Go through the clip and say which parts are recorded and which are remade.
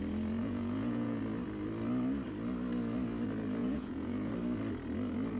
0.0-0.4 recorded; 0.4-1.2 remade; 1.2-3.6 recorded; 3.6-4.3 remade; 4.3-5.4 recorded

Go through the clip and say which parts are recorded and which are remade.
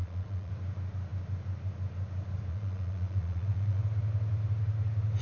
0.0-0.5 remade; 0.5-2.5 recorded; 2.5-3.8 remade; 3.8-5.2 recorded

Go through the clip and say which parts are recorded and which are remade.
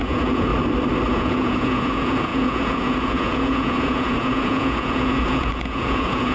0.0-0.5 remade; 0.5-1.1 recorded; 1.1-6.3 remade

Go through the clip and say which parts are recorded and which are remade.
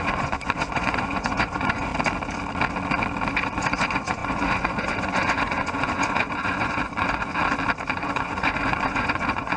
0.0-1.9 remade; 1.9-3.3 recorded; 3.3-7.3 remade; 7.3-7.9 recorded; 7.9-9.6 remade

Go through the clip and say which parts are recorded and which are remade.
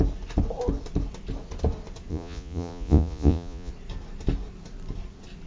0.0-2.1 recorded; 2.1-3.7 remade; 3.7-5.5 recorded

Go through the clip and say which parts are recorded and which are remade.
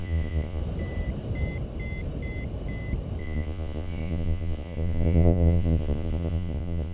0.0-0.6 remade; 0.6-3.2 recorded; 3.2-6.9 remade